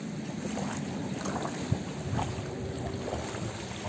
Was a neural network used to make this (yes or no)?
no